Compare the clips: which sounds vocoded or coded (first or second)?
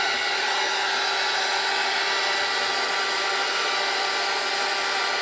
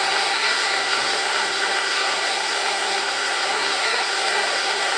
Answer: second